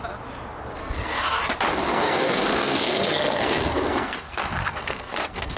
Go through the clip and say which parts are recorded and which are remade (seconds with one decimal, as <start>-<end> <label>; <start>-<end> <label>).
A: 0.0-0.8 recorded; 0.8-1.4 remade; 1.4-1.9 recorded; 1.9-5.6 remade